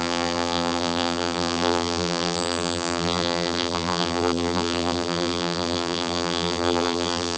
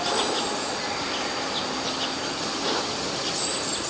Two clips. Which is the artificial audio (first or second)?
first